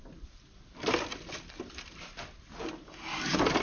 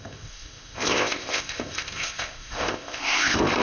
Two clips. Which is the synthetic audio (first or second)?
second